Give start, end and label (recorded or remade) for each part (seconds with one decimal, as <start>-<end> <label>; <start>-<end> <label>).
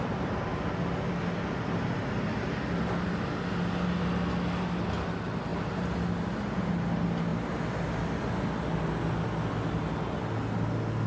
0.0-11.1 recorded